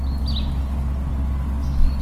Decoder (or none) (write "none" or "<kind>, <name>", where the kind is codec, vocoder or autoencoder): none